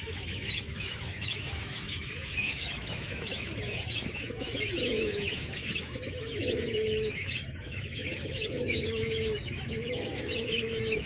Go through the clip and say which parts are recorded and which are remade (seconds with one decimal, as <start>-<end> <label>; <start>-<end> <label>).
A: 0.0-11.1 remade